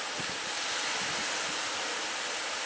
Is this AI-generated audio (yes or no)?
no